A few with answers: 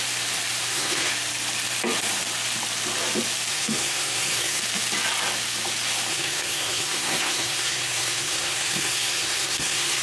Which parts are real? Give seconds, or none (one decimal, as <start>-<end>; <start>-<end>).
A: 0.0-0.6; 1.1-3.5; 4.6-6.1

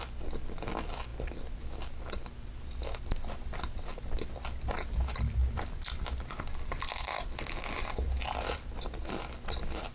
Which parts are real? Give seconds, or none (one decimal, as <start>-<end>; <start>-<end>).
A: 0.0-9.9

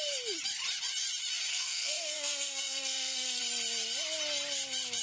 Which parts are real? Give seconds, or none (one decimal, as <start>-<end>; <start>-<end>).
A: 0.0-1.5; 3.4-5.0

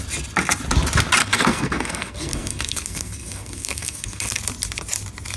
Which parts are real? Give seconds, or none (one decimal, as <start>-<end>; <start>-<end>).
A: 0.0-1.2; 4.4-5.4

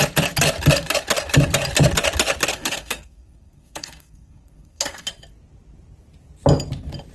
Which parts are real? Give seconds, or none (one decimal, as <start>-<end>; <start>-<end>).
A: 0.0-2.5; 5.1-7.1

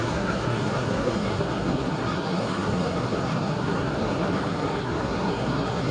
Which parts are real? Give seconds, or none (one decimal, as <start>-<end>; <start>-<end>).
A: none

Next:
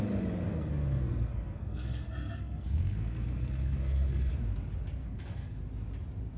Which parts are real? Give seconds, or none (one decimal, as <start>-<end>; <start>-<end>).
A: 0.0-0.5; 4.3-5.0; 5.6-6.4

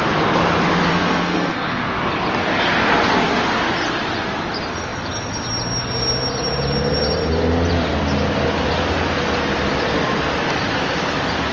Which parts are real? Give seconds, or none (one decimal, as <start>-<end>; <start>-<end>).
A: 0.0-0.9; 1.9-11.5